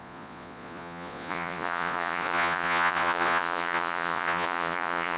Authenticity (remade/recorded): remade